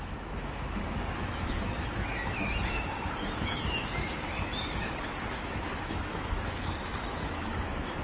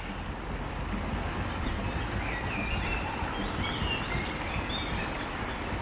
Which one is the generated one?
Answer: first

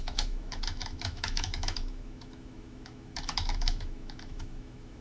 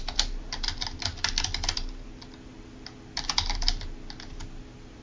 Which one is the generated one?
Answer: first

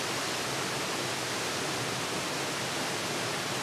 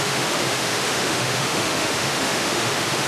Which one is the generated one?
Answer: second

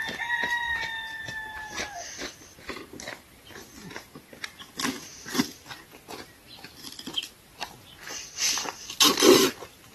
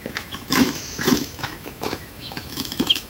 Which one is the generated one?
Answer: second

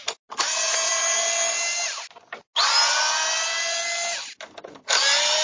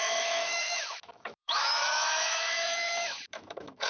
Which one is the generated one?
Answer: second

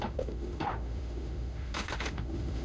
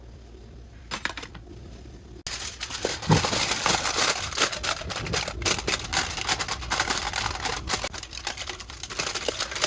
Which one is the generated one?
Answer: first